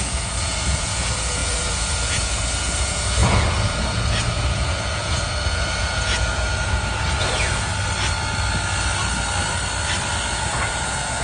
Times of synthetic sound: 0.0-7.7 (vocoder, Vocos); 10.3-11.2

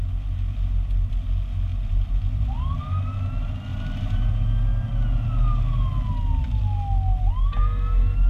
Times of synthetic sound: 3.7-4.3 (vocoder, BigVGAN v2)

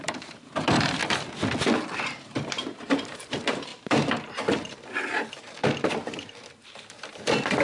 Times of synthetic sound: 0.0-1.0 (vocoder, BigVGAN v2); 1.9-7.6

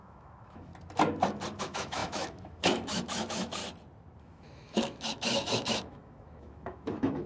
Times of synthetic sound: 0.0-0.7 (autoencoder, DAC-VAE); 1.6-3.6; 4.2-7.3